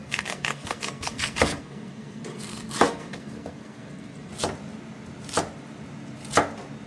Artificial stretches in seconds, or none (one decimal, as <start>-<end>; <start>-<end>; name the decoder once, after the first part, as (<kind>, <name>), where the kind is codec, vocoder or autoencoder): 0.0-4.3 (codec, SNAC)